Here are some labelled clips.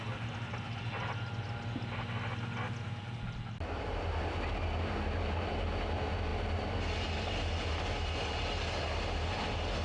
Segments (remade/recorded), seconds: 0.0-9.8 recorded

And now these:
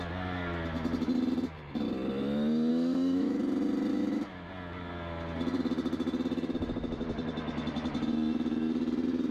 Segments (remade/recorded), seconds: 0.0-2.7 recorded; 2.7-3.4 remade; 3.4-3.9 recorded; 3.9-4.5 remade; 4.5-9.3 recorded

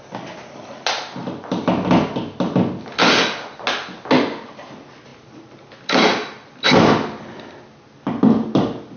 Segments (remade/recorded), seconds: 0.0-9.0 recorded

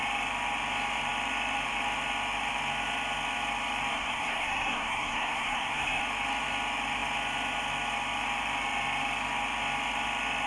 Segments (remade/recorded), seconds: 0.0-3.9 recorded; 3.9-6.0 remade; 6.0-10.5 recorded

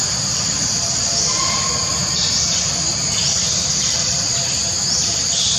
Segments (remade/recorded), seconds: 0.0-2.2 recorded; 2.2-5.6 remade